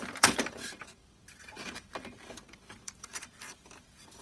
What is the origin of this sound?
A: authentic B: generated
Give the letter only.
B